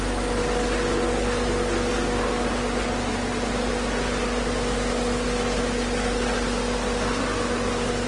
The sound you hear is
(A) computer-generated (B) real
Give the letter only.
B